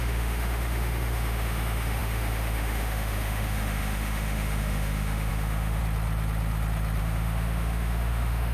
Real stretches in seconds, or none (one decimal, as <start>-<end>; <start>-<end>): 5.8-7.0